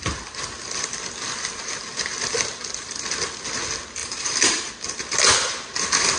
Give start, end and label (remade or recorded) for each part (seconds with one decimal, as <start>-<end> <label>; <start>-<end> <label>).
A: 0.0-4.0 recorded; 4.0-4.7 remade; 4.7-6.2 recorded